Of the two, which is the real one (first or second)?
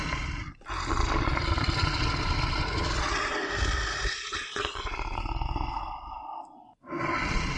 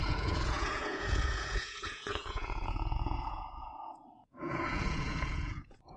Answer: first